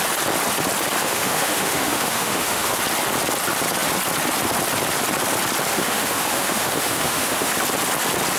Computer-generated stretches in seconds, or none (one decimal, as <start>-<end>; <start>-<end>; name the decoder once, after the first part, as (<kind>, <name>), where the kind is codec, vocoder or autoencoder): 1.0-2.8 (autoencoder, DAC-VAE); 5.7-7.5